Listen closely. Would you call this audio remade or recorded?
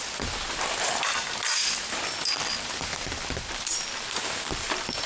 recorded